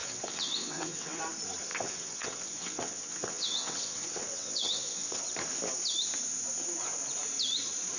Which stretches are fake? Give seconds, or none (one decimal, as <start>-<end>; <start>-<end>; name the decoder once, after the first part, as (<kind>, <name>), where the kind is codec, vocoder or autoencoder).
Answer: 0.0-1.2 (vocoder, WaveNeXt); 1.7-5.2